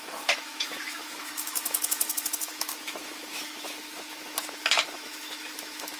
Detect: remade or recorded remade